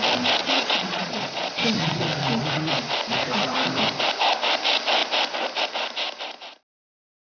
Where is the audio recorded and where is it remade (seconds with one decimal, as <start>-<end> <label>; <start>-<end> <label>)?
0.0-0.4 recorded; 0.4-2.0 remade; 2.0-7.2 recorded